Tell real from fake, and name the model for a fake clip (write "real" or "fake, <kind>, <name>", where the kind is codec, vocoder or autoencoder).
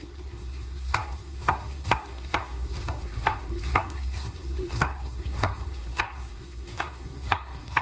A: fake, codec, SNAC